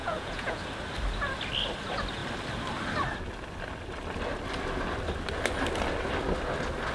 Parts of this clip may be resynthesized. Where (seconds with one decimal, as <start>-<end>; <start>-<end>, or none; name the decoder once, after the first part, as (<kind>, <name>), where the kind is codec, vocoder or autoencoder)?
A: 0.0-0.6 (vocoder, Vocos)